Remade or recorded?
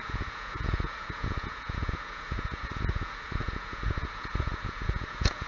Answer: remade